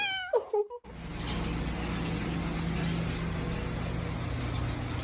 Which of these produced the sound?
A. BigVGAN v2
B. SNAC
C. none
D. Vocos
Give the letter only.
C